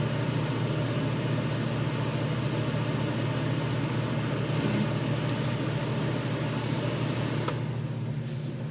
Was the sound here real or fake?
real